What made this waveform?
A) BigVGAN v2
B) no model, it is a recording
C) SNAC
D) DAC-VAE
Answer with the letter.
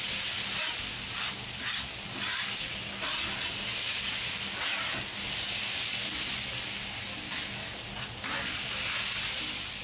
B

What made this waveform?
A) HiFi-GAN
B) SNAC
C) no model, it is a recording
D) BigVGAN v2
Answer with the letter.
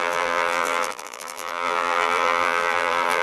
D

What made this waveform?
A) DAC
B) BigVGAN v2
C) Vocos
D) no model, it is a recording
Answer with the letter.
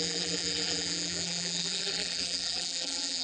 B